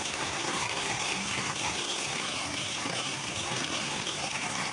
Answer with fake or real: fake